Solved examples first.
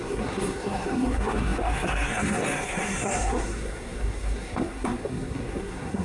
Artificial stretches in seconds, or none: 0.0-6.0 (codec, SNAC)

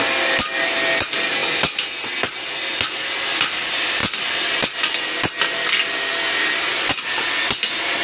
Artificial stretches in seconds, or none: none

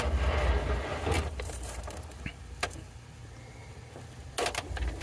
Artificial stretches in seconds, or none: 0.9-1.8 (vocoder, BigVGAN v2)

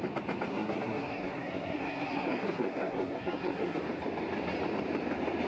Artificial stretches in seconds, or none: 0.5-3.8 (codec, SNAC)